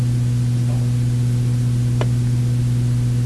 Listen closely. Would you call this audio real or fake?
real